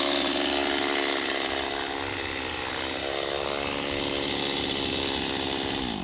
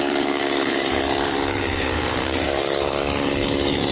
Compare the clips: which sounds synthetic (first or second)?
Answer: second